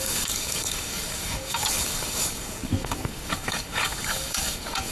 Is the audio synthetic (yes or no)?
yes